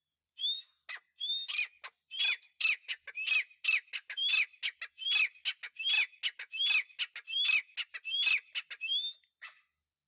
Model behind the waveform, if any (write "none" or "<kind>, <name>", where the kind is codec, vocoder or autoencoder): none